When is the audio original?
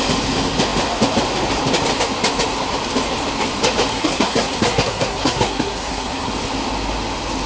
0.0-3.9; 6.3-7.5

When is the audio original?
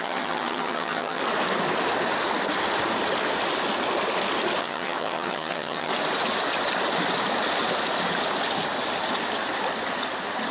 1.2-4.6; 5.9-10.5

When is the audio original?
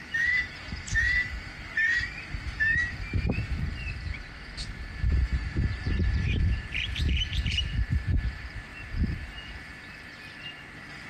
8.7-10.6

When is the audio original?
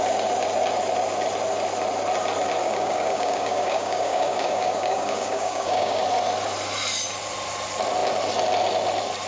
0.0-2.6; 6.0-9.3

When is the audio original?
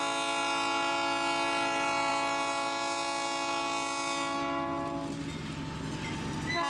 0.0-6.7